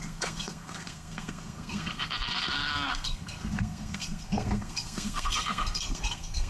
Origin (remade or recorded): remade